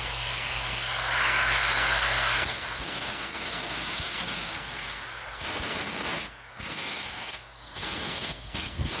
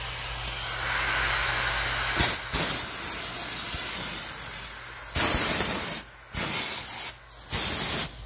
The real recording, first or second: second